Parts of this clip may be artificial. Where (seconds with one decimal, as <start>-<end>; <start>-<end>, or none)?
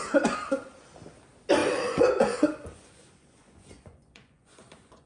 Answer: 1.6-5.1